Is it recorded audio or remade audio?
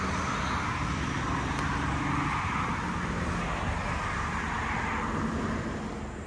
recorded